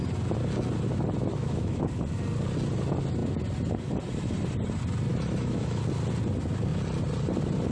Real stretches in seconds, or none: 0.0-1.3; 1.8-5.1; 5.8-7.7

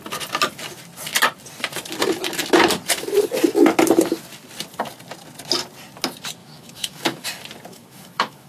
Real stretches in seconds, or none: 0.0-6.4; 7.2-7.7

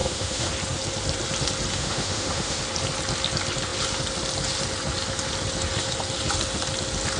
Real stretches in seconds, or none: 0.5-1.7; 2.6-7.2